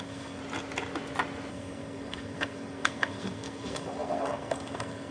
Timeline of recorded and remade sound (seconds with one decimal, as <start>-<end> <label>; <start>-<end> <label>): 0.0-0.4 remade; 0.4-1.5 recorded; 1.5-5.1 remade